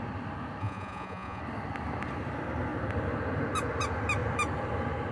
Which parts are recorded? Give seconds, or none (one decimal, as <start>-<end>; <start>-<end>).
0.0-0.6; 1.4-5.1